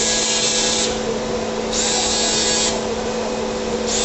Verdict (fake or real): real